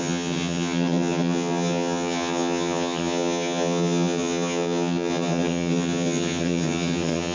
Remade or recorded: remade